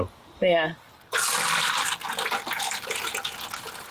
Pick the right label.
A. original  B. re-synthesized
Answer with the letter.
A